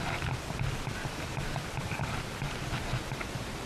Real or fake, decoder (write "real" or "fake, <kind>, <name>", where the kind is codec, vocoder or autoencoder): real